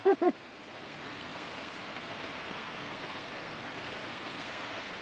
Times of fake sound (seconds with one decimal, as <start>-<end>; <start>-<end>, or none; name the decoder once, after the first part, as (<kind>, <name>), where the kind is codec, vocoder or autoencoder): 0.0-5.0 (codec, SNAC)